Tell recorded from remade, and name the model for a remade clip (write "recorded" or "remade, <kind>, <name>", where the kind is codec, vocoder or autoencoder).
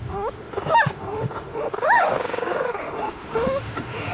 remade, autoencoder, DAC-VAE